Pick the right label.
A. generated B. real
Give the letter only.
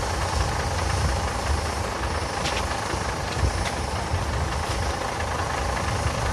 B